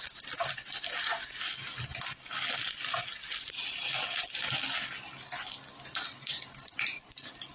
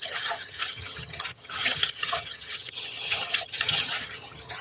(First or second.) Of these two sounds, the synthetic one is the second